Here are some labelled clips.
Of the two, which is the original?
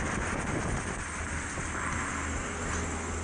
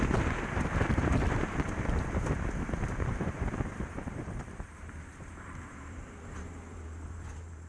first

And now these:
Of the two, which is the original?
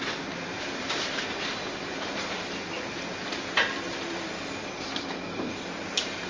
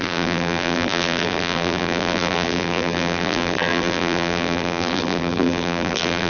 first